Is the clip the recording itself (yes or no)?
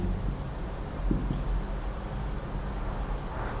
yes